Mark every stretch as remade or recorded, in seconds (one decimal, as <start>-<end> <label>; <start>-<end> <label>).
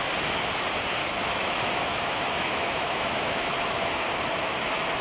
0.0-1.0 recorded; 1.0-4.0 remade; 4.0-5.0 recorded